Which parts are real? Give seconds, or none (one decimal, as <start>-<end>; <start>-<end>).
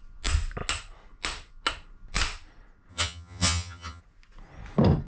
0.0-2.9; 4.0-5.1